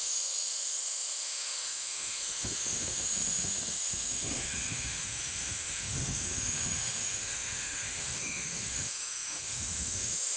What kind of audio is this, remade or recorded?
remade